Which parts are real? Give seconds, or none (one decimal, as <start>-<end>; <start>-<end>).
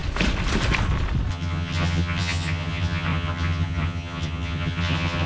0.0-1.3